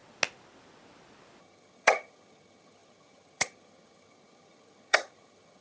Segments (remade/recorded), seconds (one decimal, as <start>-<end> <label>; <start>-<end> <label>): 0.0-1.4 recorded; 1.4-5.6 remade